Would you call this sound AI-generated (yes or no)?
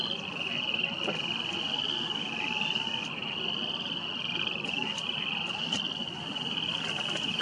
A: no